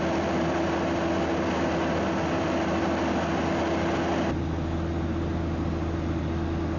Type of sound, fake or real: real